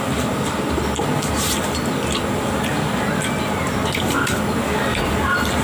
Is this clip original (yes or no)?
yes